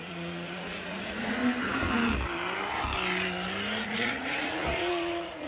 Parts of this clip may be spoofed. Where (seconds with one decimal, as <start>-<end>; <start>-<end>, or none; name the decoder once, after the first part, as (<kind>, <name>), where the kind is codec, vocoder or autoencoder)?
0.0-1.4 (vocoder, Vocos); 3.8-5.5